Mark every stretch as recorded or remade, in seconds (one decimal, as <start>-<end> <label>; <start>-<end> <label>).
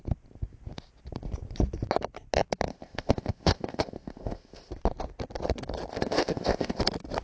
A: 0.0-2.7 recorded; 2.7-4.7 remade; 4.7-5.9 recorded; 5.9-6.8 remade; 6.8-7.2 recorded